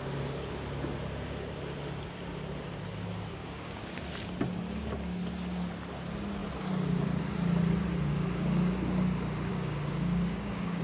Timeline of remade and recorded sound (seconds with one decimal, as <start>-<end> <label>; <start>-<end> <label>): 0.0-3.3 recorded; 3.3-3.9 remade; 3.9-9.5 recorded; 9.5-10.8 remade